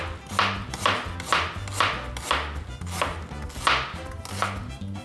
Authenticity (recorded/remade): recorded